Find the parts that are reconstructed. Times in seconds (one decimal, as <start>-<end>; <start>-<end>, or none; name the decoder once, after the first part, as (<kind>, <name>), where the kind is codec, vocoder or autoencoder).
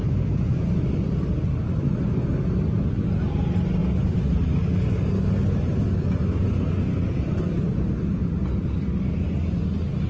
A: none